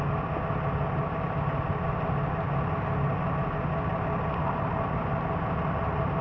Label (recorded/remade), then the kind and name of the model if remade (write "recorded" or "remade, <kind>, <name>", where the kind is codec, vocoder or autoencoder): recorded